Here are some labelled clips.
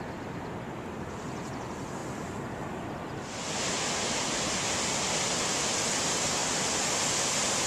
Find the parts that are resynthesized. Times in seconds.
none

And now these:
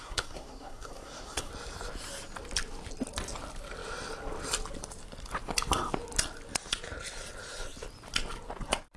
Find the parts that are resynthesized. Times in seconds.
0.0-1.5 (codec, SNAC)

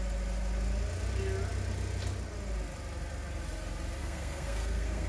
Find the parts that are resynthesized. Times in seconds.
4.0-5.1 (codec, SNAC)

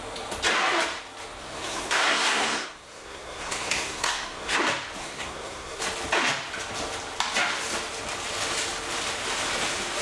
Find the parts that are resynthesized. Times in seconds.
1.4-4.6 (codec, SNAC); 5.0-5.8

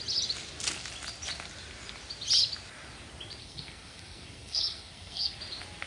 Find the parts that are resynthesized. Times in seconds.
3.4-5.4 (codec, SNAC)

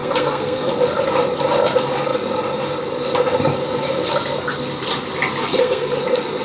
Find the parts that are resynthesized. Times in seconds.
0.0-0.7 (codec, SNAC); 5.4-6.0

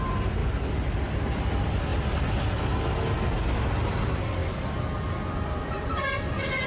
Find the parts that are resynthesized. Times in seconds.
none